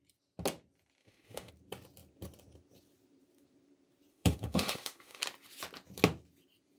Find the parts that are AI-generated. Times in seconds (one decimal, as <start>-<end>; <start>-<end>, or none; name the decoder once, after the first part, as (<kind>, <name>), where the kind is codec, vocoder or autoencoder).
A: 1.0-1.5 (autoencoder, DAC-VAE); 4.1-5.2